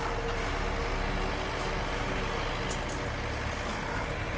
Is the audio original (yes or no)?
yes